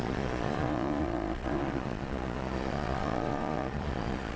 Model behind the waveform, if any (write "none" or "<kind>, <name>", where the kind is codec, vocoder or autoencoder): vocoder, Vocos